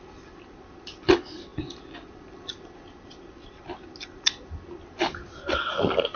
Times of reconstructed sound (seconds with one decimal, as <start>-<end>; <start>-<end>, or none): none